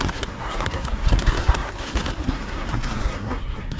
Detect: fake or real fake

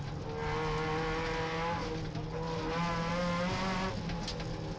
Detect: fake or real real